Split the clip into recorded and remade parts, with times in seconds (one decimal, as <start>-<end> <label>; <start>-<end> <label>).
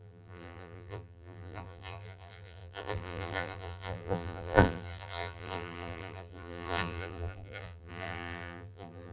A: 0.0-9.1 remade